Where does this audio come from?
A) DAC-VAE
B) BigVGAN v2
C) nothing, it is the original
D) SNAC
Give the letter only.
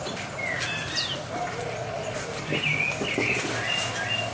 C